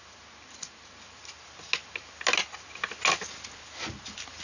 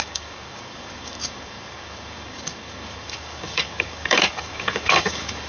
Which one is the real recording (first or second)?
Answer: first